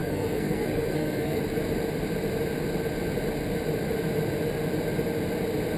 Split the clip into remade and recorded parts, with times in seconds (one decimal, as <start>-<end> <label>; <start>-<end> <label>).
0.0-1.4 remade; 1.4-5.8 recorded